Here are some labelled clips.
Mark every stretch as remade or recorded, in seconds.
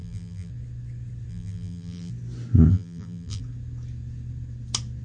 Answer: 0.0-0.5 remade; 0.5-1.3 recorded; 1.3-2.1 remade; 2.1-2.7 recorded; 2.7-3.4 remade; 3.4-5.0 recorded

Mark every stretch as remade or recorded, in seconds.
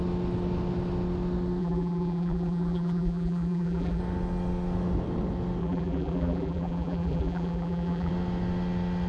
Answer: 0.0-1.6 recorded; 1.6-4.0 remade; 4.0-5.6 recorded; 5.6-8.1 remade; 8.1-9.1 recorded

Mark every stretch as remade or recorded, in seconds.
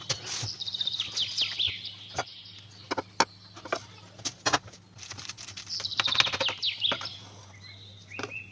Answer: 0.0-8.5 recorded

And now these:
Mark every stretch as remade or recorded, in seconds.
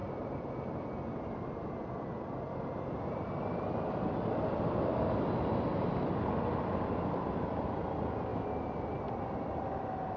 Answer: 0.0-0.5 remade; 0.5-10.2 recorded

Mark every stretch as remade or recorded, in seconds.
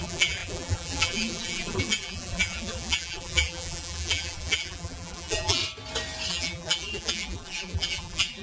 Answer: 0.0-5.6 remade; 5.6-6.3 recorded; 6.3-8.4 remade